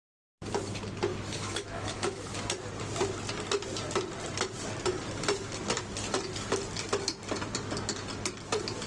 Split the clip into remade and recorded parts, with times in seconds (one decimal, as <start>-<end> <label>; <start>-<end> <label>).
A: 0.0-1.1 recorded; 1.1-2.2 remade; 2.2-8.9 recorded